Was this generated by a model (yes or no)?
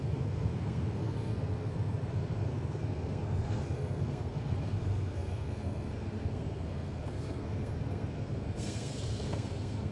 yes